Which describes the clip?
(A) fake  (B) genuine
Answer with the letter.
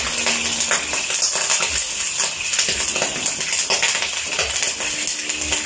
B